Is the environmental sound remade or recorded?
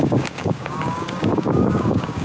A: remade